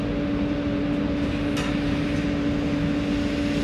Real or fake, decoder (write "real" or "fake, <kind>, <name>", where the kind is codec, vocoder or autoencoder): real